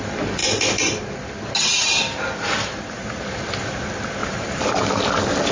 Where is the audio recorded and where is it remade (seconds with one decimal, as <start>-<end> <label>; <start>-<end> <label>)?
0.0-1.7 recorded; 1.7-3.7 remade; 3.7-4.2 recorded; 4.2-4.7 remade; 4.7-5.5 recorded